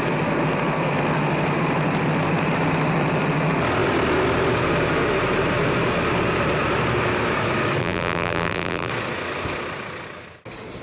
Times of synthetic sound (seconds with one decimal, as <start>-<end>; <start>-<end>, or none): 7.8-8.9

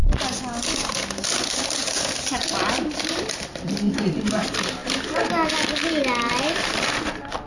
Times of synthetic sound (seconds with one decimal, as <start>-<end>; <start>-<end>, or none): 2.4-4.3

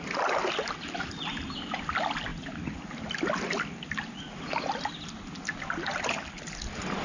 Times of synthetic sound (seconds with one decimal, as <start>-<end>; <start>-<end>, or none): none

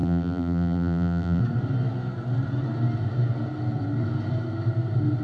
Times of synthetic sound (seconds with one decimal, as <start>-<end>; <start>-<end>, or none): 0.0-1.4

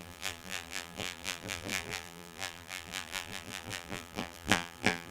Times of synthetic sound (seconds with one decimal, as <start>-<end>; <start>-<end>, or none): 0.0-5.1

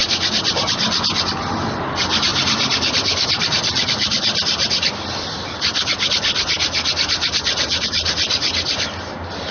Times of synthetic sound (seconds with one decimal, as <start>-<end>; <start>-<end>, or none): 0.0-0.6; 2.3-5.4

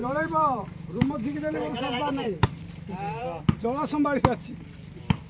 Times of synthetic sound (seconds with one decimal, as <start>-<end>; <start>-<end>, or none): 0.0-3.2

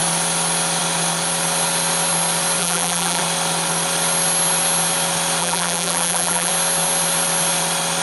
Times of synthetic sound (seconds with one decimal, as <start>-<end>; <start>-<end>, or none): 2.6-3.2; 5.4-6.5